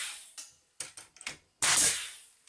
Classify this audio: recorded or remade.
recorded